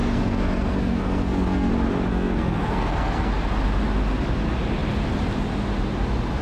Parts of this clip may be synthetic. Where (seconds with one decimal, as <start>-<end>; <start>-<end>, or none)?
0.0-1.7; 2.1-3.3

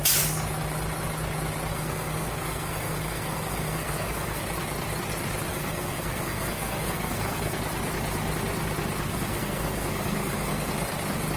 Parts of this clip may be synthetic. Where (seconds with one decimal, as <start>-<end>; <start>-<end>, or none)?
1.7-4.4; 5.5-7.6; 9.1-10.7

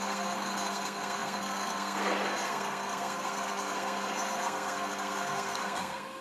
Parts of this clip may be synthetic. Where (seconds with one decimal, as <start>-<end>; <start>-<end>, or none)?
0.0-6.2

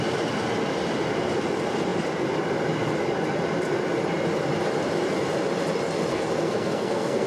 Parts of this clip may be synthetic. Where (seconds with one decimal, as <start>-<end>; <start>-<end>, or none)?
6.1-7.3